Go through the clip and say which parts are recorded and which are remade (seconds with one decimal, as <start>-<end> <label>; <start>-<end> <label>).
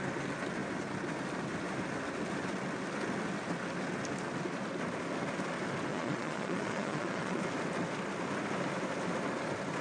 0.0-5.9 recorded; 5.9-7.4 remade; 7.4-9.8 recorded